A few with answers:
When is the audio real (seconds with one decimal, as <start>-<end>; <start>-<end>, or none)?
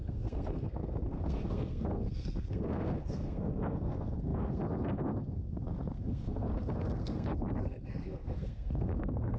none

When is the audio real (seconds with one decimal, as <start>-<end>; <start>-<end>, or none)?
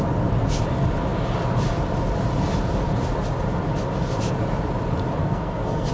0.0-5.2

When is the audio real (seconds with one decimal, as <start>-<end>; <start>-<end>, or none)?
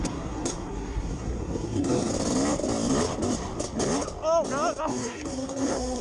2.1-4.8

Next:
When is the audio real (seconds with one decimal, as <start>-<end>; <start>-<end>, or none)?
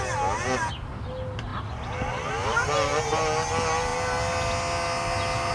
0.0-5.5